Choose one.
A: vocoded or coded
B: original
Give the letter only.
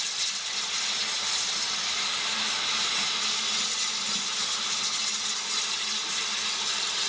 B